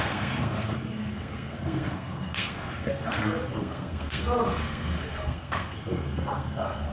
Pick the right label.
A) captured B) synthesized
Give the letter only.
B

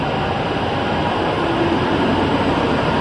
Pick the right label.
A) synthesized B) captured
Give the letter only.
B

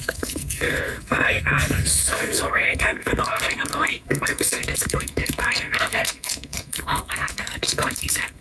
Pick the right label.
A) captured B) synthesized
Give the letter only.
B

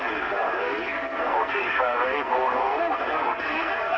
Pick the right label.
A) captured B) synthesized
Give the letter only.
B